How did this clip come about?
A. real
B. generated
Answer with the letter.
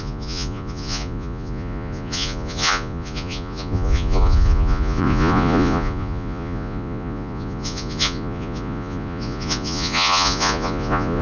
B